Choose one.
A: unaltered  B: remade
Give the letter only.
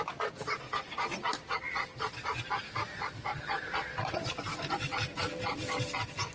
A